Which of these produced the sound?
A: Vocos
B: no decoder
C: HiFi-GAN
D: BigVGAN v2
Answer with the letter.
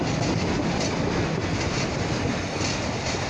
B